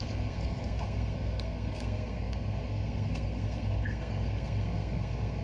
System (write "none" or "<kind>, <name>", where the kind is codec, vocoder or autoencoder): codec, SNAC